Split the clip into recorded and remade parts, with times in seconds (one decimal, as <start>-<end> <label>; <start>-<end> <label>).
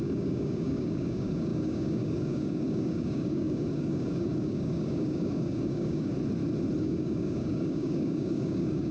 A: 0.0-6.1 remade; 6.1-6.8 recorded; 6.8-8.9 remade